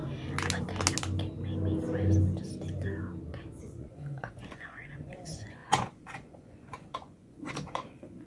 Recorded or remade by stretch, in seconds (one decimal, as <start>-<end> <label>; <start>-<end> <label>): 0.0-3.6 recorded; 3.6-8.3 remade